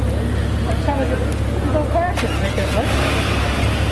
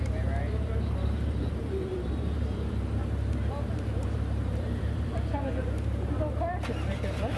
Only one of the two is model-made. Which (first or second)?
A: second